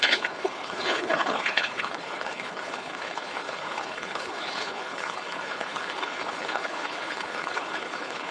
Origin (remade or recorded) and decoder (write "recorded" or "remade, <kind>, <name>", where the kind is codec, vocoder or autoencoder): remade, codec, HILCodec